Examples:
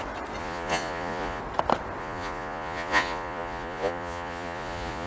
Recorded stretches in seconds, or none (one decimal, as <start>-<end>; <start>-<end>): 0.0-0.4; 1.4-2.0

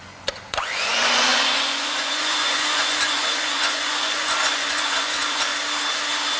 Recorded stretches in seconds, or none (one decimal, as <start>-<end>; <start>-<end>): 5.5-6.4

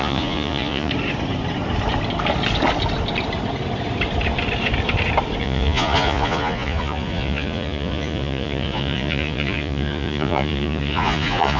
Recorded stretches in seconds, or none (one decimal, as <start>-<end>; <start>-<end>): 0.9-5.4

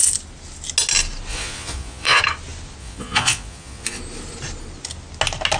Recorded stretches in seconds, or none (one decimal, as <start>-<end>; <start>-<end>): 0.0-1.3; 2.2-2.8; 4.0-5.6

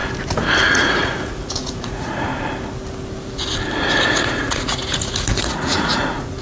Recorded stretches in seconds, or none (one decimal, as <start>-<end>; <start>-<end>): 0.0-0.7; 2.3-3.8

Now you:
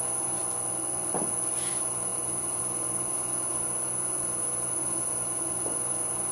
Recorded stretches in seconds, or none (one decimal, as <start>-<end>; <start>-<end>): 0.4-1.7